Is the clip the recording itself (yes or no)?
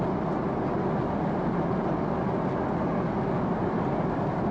yes